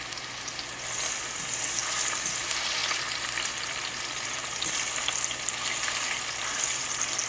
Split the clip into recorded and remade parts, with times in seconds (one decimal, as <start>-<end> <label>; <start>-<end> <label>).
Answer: 0.0-7.3 recorded